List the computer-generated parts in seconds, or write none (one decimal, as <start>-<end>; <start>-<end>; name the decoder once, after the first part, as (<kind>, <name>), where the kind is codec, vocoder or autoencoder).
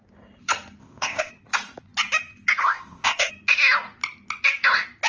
0.8-1.3 (codec, ZipCodec); 2.6-3.3